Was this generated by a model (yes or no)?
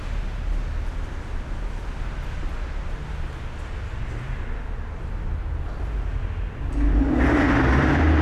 no